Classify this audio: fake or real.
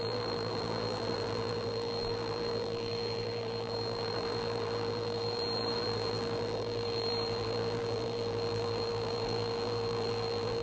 fake